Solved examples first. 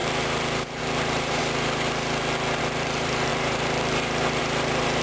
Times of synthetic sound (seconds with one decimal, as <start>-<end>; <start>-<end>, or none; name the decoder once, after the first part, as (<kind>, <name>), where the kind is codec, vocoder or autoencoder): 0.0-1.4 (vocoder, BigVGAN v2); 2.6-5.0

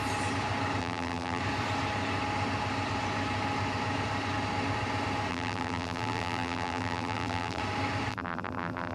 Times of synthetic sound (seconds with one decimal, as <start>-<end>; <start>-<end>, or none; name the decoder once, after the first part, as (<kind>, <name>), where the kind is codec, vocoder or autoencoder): 0.8-1.4 (vocoder, BigVGAN v2); 5.3-7.6; 8.1-8.9

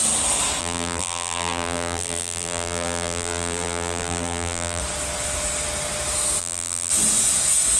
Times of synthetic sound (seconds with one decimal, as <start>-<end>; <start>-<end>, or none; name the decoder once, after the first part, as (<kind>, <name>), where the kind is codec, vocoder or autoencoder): 0.6-4.8 (vocoder, BigVGAN v2); 6.4-6.9

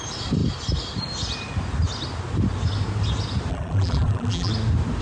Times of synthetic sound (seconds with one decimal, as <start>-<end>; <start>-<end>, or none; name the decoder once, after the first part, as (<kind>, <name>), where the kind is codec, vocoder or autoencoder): 3.5-4.5 (vocoder, BigVGAN v2)

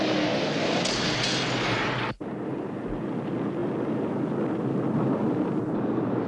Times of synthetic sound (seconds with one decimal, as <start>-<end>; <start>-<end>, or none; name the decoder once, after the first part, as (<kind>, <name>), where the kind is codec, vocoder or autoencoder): none

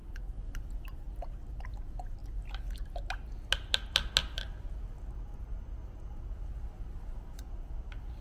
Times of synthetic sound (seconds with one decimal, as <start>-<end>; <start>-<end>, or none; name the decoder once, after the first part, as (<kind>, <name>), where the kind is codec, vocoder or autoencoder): none